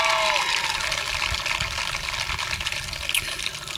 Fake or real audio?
real